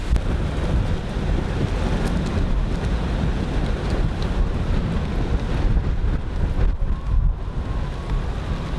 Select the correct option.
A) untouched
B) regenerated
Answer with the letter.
A